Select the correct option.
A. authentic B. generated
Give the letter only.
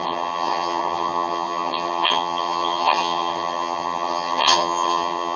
B